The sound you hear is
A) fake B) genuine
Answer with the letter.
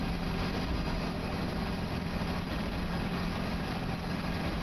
B